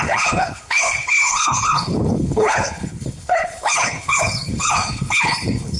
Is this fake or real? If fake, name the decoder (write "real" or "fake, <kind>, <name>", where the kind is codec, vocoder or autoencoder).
fake, codec, HILCodec